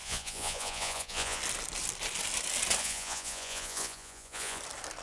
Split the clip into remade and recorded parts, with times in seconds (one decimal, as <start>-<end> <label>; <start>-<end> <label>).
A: 0.0-1.4 remade; 1.4-2.8 recorded; 2.8-4.6 remade; 4.6-5.0 recorded